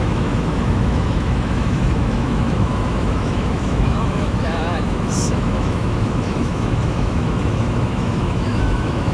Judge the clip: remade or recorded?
remade